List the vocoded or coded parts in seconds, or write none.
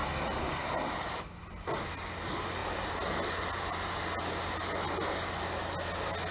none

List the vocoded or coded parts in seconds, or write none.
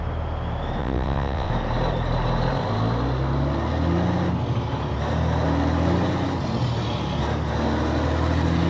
0.8-1.5